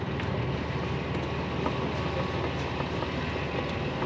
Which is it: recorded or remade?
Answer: recorded